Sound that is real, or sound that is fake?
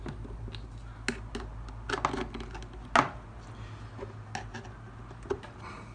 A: real